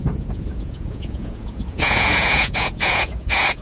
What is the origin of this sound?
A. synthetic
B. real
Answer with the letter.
A